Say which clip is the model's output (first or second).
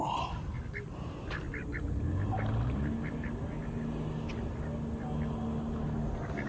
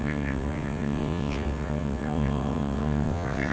second